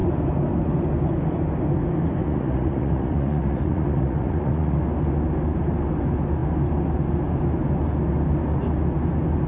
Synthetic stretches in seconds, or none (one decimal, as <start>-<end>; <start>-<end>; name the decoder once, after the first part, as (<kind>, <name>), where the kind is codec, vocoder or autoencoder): 2.2-4.8 (vocoder, Vocos)